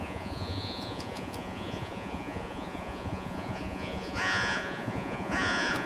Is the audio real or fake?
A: fake